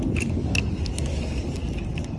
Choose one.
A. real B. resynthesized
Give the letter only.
A